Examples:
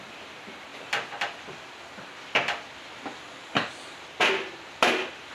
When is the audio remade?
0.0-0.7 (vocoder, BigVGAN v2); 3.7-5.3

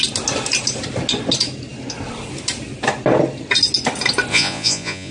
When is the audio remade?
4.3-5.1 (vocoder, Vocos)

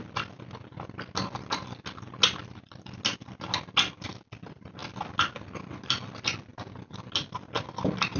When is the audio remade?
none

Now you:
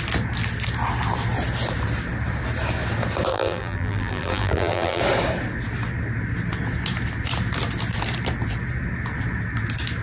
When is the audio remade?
3.3-5.0 (vocoder, BigVGAN v2)

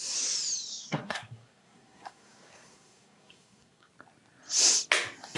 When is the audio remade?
0.7-3.9 (codec, SNAC)